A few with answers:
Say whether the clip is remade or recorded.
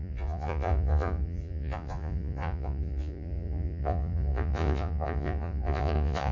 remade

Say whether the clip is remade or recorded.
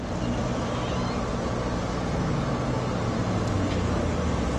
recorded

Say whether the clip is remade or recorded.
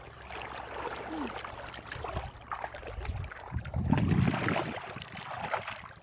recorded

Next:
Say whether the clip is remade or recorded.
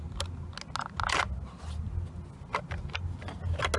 recorded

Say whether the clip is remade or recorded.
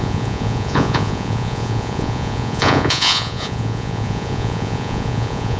remade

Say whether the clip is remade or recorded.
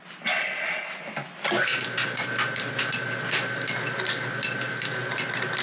recorded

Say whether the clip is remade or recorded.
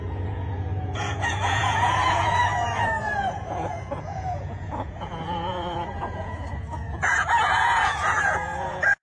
remade